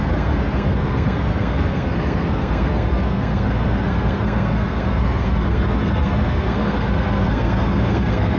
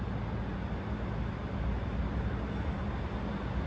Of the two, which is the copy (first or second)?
first